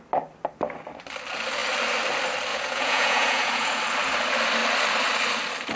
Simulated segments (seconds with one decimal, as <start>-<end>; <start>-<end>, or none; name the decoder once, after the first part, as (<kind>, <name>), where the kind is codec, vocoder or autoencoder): 2.5-3.8 (vocoder, Vocos)